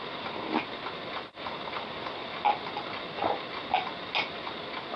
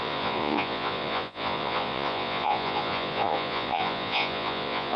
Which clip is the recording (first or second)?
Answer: first